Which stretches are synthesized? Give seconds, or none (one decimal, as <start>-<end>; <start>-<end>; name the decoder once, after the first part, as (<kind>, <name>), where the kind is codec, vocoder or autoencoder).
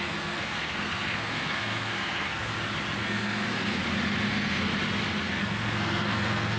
0.0-2.5 (codec, SNAC); 3.0-3.8; 4.3-4.7; 5.3-6.6